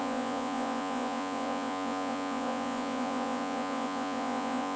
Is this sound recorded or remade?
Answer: remade